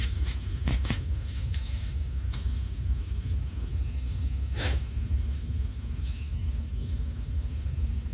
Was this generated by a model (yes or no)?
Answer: yes